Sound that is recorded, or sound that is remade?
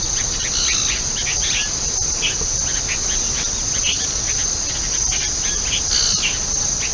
recorded